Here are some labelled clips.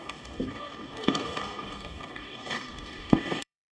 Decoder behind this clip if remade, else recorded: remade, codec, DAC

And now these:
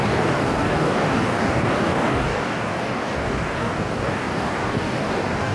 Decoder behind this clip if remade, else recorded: remade, codec, DAC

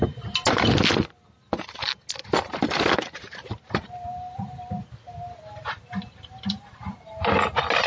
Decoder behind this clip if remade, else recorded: recorded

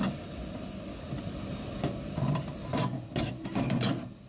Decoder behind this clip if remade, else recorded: recorded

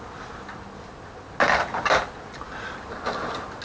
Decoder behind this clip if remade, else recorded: recorded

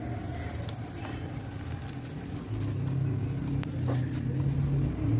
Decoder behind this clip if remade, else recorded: recorded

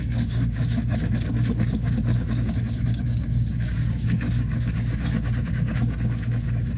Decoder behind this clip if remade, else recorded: remade, codec, DAC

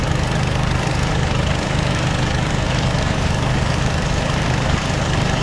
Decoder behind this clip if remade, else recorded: remade, codec, DAC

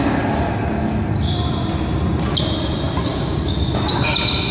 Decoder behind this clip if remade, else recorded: recorded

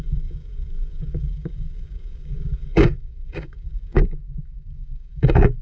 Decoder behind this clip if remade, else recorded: remade, codec, DAC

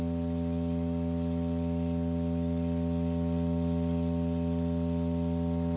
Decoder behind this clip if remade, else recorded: recorded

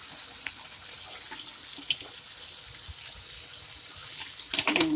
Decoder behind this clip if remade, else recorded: recorded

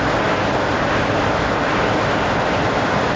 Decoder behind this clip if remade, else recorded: recorded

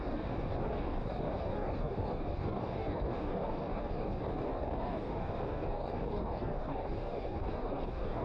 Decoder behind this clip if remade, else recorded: remade, codec, DAC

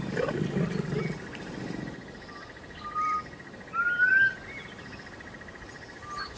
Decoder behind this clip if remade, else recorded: recorded